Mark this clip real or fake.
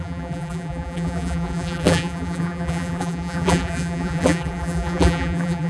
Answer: fake